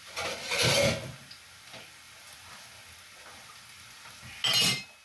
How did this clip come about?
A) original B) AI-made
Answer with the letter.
A